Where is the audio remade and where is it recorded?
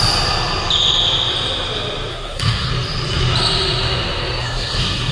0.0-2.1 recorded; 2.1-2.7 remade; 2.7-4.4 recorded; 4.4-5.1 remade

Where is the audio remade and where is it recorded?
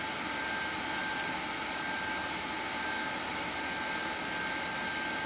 0.0-5.3 recorded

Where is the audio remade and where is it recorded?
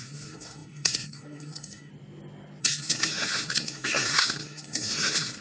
0.0-1.9 remade; 1.9-2.6 recorded; 2.6-5.4 remade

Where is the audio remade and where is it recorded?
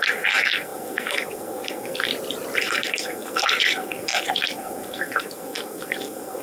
0.0-2.1 remade; 2.1-2.6 recorded; 2.6-6.4 remade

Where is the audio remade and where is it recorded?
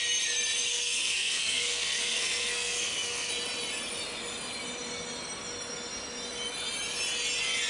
0.0-0.7 recorded; 0.7-3.3 remade; 3.3-7.7 recorded